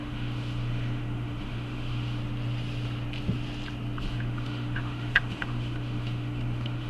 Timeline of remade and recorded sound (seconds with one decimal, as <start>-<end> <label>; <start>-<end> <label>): 0.0-2.2 remade; 2.2-4.0 recorded; 4.0-6.9 remade